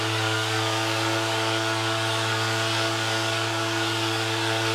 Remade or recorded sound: remade